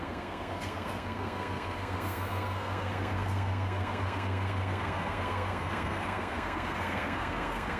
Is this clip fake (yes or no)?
yes